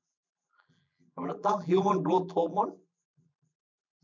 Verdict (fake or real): fake